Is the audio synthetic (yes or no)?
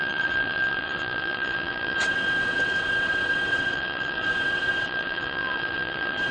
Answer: yes